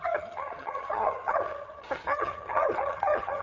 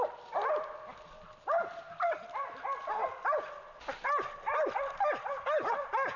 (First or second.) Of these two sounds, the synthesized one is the first